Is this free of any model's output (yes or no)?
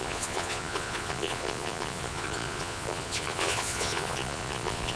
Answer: no